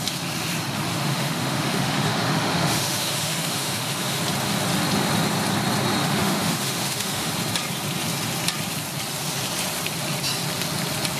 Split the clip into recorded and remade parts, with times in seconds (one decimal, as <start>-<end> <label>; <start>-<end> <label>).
0.0-0.9 recorded; 0.9-4.2 remade; 4.2-6.0 recorded; 6.0-7.3 remade; 7.3-11.2 recorded